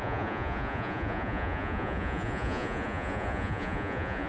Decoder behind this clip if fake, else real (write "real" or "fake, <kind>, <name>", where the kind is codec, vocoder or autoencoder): fake, vocoder, Vocos